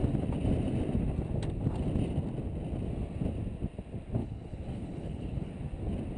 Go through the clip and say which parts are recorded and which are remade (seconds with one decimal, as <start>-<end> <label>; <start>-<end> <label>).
0.0-4.2 recorded; 4.2-5.5 remade; 5.5-6.2 recorded